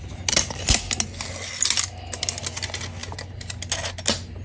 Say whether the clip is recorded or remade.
recorded